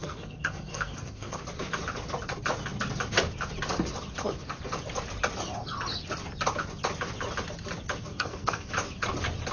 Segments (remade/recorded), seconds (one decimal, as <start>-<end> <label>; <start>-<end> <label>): 0.0-1.4 remade; 1.4-8.1 recorded; 8.1-8.7 remade; 8.7-9.5 recorded